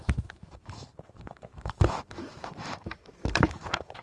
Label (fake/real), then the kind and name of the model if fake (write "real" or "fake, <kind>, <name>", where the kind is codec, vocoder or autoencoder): fake, autoencoder, DAC-VAE